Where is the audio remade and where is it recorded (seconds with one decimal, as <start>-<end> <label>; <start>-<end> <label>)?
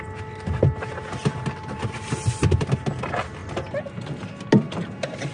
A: 0.0-5.3 recorded